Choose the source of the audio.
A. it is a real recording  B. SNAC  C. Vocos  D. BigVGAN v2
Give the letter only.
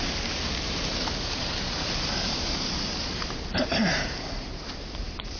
D